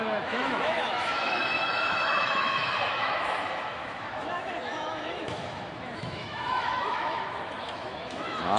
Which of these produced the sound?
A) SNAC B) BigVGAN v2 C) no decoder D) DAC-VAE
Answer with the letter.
D